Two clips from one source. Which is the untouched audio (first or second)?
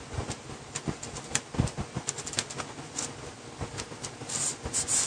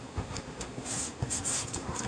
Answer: first